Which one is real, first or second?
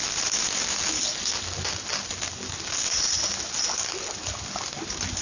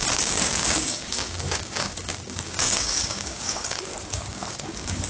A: first